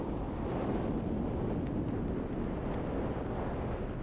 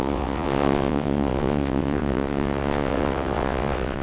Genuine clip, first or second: first